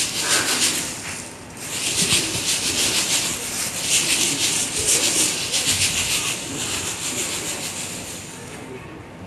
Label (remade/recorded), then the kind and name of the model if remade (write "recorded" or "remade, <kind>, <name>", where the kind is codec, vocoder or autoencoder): recorded